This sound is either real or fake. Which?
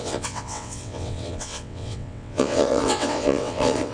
fake